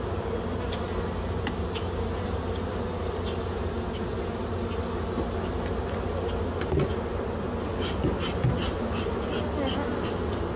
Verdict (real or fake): real